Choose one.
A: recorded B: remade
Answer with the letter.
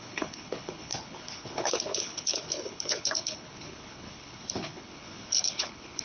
B